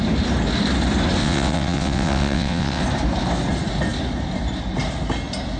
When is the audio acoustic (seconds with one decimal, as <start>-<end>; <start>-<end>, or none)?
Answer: 0.0-1.2; 2.8-5.6